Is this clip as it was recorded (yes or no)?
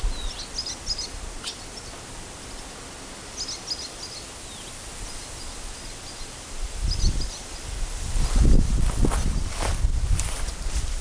yes